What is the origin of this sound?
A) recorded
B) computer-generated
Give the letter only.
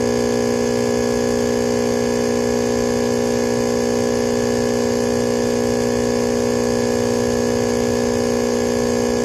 A